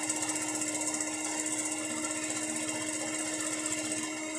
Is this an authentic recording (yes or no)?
yes